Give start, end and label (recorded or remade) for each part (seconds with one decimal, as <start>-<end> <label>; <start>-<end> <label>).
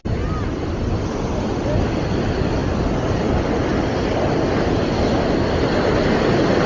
0.0-6.7 recorded